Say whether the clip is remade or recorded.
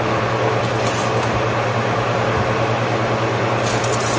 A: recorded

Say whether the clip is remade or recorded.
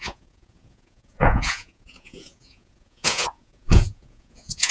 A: remade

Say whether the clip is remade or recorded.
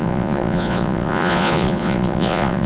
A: remade